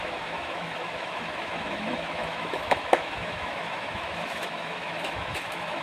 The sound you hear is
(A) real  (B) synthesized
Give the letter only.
B